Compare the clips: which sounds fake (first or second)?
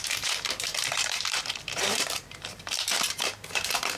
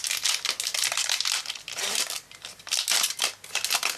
first